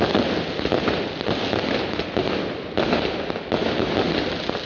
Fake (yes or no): no